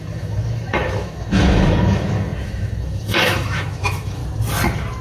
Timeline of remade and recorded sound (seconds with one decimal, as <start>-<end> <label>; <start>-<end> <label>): 0.0-4.2 remade; 4.2-5.0 recorded